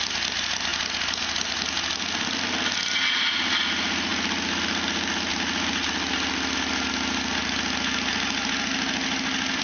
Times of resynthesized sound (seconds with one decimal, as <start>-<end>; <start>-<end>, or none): none